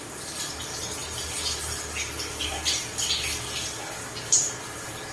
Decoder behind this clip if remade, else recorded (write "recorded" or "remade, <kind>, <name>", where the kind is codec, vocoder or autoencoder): recorded